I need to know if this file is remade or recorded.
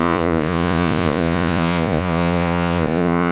remade